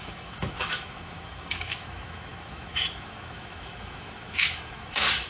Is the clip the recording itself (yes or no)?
no